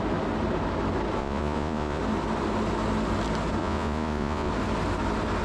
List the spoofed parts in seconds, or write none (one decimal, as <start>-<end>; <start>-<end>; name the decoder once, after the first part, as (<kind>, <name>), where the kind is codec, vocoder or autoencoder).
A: 1.2-2.0 (vocoder, Vocos); 3.6-4.5